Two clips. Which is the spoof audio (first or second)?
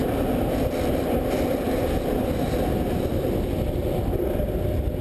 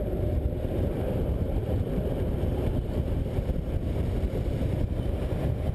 second